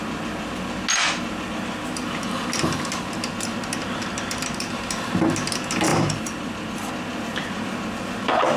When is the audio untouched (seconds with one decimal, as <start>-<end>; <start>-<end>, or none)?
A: 0.0-4.0; 4.7-5.9; 6.9-8.6